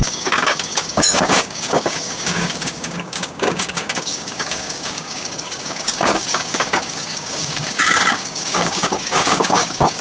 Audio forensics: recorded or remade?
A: remade